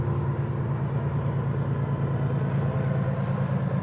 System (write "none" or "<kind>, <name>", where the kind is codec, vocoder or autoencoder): none